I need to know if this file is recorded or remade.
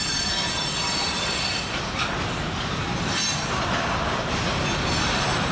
recorded